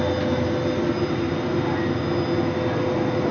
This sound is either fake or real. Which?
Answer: real